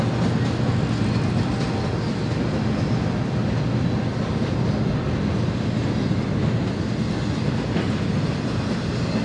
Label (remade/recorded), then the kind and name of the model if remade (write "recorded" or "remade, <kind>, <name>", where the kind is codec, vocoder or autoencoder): recorded